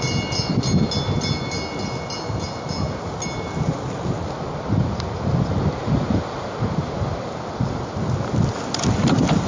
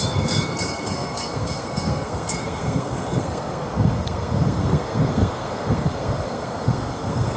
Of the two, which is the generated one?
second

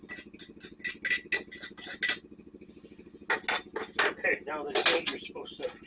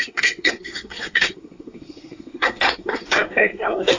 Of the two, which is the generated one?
second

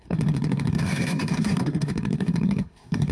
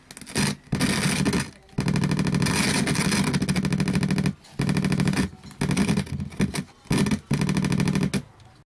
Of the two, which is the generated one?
first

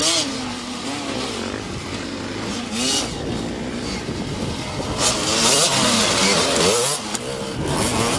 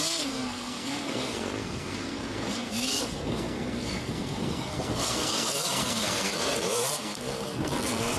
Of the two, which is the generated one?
second